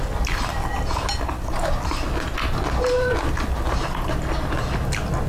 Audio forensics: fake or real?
real